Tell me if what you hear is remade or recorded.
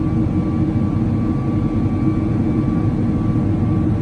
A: recorded